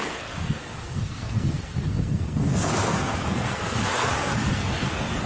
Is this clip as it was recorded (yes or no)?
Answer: no